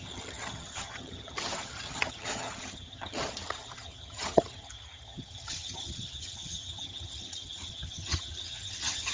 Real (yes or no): no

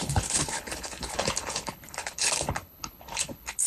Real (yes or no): no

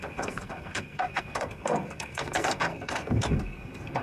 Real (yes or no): no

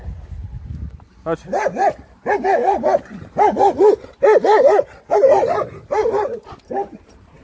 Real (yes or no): no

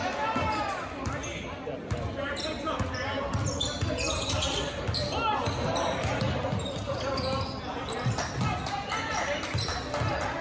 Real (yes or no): yes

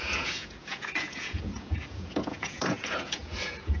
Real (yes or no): no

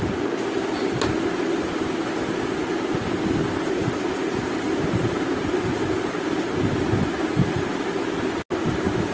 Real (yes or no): yes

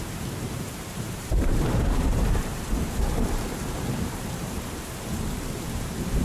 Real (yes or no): no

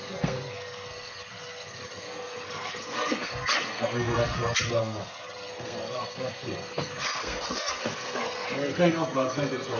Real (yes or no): no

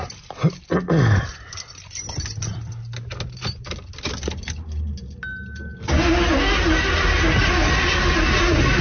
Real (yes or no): yes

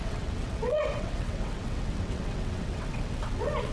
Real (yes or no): no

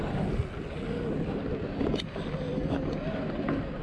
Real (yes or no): yes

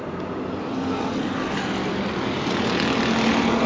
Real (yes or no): yes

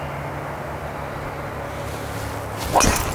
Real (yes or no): yes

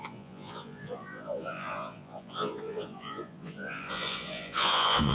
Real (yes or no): no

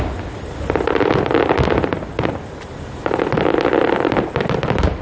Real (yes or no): no